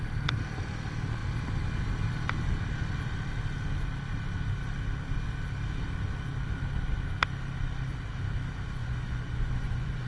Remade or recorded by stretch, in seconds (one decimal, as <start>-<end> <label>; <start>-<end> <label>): 0.0-8.8 recorded; 8.8-10.1 remade